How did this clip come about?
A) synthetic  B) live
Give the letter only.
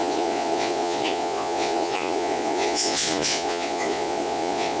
A